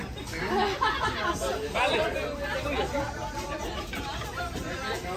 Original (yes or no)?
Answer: yes